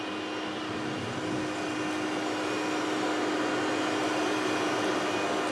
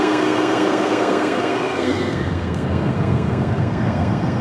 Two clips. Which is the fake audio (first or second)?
second